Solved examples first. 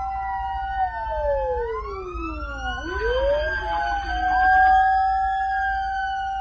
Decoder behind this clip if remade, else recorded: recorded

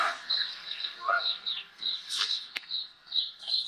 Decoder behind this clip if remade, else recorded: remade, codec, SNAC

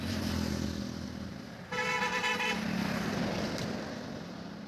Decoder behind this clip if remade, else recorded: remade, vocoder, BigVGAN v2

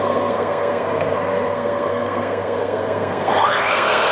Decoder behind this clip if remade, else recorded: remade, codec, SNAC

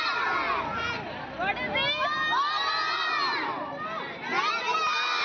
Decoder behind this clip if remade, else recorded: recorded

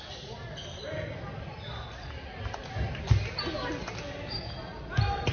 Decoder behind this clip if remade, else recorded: recorded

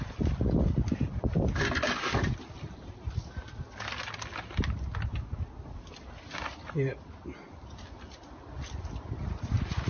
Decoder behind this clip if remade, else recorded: recorded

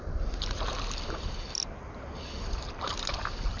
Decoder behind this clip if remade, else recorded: recorded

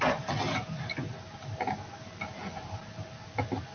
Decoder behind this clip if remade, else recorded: recorded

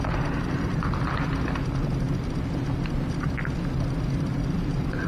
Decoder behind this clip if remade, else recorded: remade, vocoder, BigVGAN v2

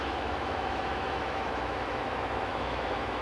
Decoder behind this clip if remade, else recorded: remade, autoencoder, DAC-VAE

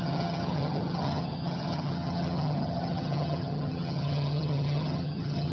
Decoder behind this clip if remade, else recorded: remade, vocoder, HiFi-GAN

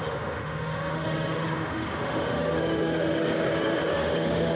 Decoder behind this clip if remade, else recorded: remade, autoencoder, DAC-VAE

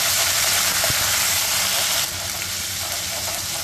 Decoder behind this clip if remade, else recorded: recorded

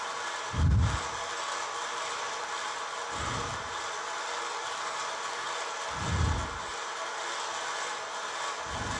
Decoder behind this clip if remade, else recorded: recorded